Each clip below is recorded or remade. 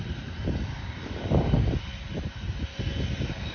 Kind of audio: recorded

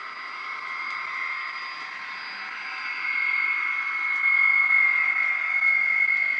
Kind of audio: recorded